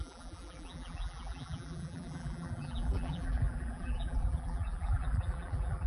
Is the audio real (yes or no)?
no